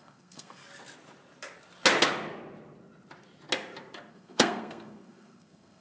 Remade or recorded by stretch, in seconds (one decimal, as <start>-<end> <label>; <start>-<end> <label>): 0.0-0.6 remade; 0.6-4.1 recorded; 4.1-5.8 remade